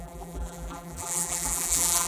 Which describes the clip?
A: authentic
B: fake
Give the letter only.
B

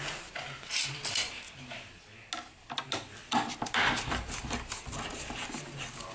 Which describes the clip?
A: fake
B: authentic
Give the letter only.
B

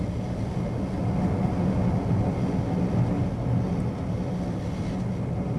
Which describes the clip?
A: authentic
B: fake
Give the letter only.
A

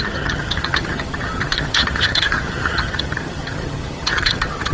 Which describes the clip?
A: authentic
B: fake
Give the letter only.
B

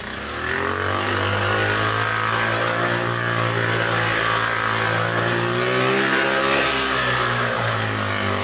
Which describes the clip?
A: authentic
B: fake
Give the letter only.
A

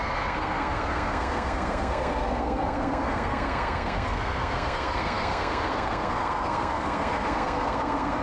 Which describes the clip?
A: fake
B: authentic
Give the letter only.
A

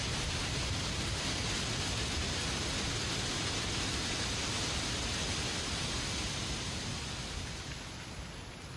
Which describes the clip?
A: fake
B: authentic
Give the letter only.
B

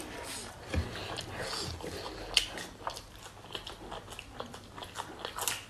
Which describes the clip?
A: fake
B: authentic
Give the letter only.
B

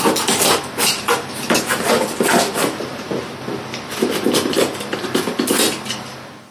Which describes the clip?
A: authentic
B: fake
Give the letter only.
A